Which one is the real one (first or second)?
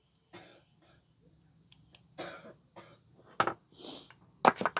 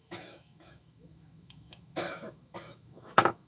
first